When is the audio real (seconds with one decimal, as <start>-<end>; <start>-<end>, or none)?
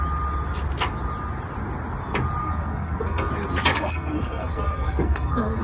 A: 0.0-2.4; 3.3-3.7